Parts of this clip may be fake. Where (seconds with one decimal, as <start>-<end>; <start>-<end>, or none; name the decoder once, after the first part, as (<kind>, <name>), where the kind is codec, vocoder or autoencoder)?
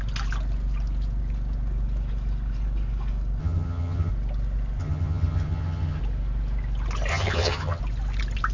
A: 3.4-4.1 (vocoder, HiFi-GAN); 4.8-6.0; 7.1-7.8